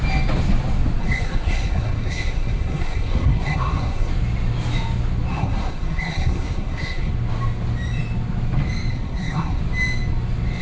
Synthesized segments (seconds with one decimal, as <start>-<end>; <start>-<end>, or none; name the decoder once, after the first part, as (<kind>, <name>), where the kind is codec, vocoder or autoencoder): 1.0-4.1 (codec, SNAC); 5.3-7.1; 8.9-9.6